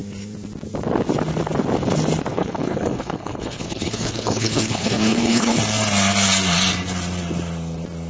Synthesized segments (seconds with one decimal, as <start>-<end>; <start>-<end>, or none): 2.3-5.6